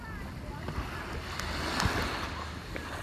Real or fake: real